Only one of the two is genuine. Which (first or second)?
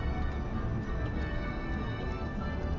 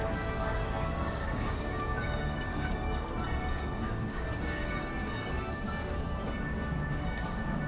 first